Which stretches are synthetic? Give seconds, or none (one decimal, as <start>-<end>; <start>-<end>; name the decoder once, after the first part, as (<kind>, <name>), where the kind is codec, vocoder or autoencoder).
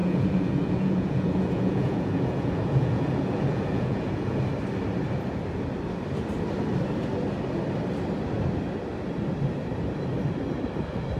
0.0-4.4 (vocoder, Vocos)